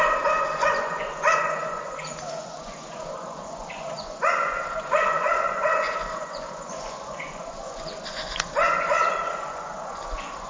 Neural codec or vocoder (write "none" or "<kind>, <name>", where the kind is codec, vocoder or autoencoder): vocoder, Vocos